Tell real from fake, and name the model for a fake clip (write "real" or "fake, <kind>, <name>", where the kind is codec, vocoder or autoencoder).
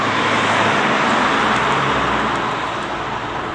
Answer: real